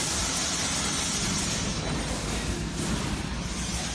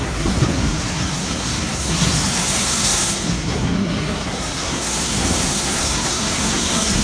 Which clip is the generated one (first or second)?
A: second